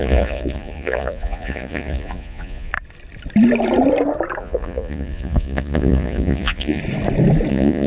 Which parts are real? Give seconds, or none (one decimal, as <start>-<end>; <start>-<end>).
2.7-4.4; 6.8-7.5